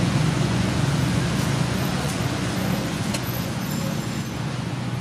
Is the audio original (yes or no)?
no